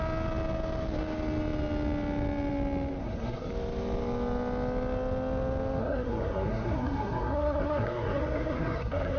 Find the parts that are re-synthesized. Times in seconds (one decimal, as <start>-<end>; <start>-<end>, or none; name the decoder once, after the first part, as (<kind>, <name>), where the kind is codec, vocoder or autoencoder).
3.0-3.5 (codec, SNAC); 5.8-9.2